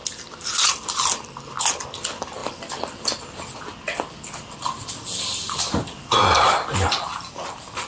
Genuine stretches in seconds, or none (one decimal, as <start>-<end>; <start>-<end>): 0.0-7.9